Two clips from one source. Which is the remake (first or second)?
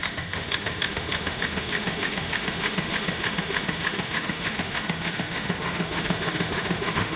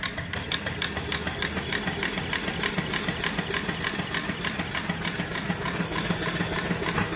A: first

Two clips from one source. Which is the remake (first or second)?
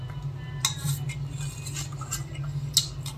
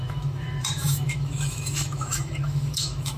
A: second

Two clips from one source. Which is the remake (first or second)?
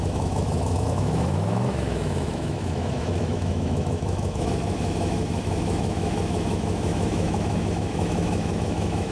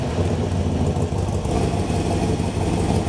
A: first